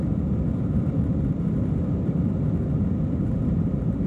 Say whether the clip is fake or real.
fake